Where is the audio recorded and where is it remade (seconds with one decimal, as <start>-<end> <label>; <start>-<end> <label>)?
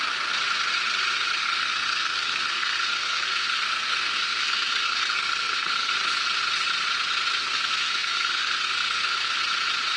0.0-1.4 recorded; 1.4-5.9 remade; 5.9-7.4 recorded; 7.4-9.3 remade; 9.3-10.0 recorded